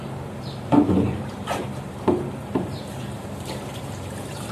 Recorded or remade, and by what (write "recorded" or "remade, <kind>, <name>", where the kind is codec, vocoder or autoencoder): remade, vocoder, BigVGAN v2